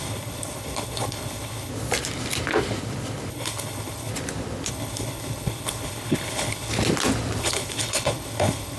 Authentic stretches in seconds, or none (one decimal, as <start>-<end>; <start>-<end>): 1.7-3.3; 4.1-4.7; 6.7-7.4